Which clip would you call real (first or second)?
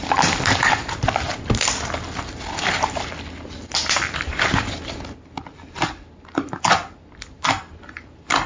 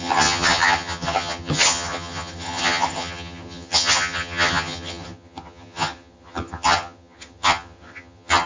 first